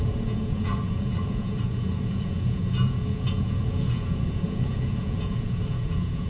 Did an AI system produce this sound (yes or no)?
yes